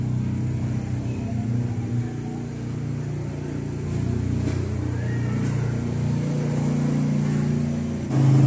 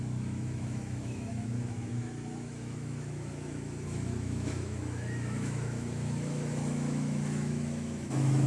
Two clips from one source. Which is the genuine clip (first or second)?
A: first